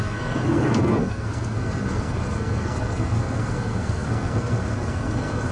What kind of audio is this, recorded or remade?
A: remade